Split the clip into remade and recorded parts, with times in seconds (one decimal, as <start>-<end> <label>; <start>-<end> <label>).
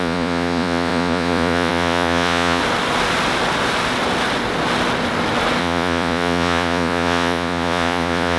0.0-2.6 remade; 2.6-5.6 recorded; 5.6-8.4 remade